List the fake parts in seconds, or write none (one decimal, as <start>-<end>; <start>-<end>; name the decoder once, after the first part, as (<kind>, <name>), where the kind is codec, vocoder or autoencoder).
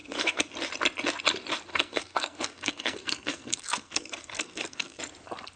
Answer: 0.0-0.5 (codec, SNAC); 1.7-5.0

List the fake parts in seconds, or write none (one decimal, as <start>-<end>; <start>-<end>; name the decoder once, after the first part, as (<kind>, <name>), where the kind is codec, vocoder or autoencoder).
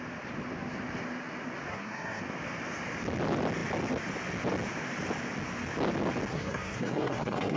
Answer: 1.7-2.2 (codec, SNAC); 6.3-7.6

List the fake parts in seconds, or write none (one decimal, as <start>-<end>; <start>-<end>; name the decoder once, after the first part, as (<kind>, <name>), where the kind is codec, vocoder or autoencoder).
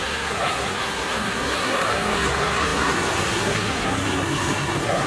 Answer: 0.0-5.1 (codec, SNAC)